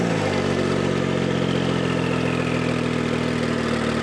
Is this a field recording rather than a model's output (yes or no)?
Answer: yes